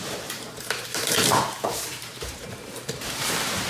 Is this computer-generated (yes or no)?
yes